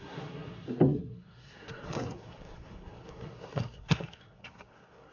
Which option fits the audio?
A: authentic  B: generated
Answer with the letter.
B